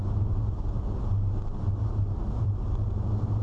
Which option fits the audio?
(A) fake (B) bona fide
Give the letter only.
A